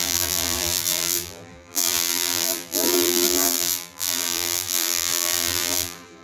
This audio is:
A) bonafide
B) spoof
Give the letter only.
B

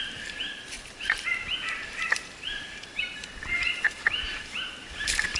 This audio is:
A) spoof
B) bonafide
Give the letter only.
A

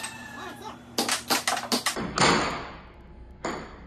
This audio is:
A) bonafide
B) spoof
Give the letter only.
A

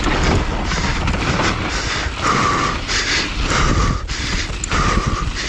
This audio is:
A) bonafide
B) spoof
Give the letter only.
A